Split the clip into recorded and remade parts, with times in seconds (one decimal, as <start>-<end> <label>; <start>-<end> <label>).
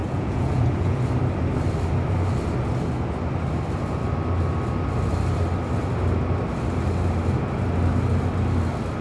0.0-1.0 remade; 1.0-9.0 recorded